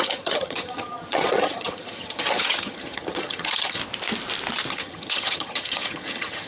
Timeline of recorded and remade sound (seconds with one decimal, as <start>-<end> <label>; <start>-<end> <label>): 0.0-3.8 remade; 3.8-4.7 recorded; 4.7-6.5 remade